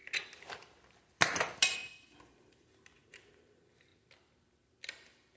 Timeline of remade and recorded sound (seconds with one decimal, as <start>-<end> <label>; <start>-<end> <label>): 0.0-1.1 recorded; 1.1-5.4 remade